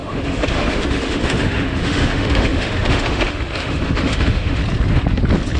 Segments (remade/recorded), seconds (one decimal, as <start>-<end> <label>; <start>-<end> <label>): 0.0-4.6 remade; 4.6-5.6 recorded